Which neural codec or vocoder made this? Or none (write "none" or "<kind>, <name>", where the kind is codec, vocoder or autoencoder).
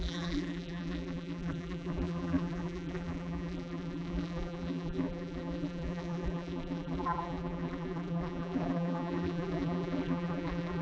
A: vocoder, BigVGAN v2